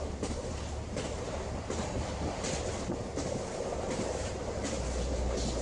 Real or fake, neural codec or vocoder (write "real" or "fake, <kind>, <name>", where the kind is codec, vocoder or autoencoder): fake, vocoder, BigVGAN v2